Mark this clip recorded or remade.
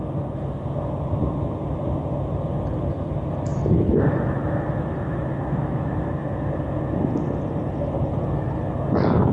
recorded